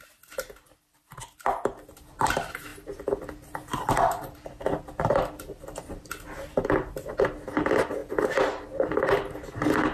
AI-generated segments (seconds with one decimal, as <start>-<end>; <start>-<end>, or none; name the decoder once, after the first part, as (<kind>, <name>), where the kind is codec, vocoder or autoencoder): none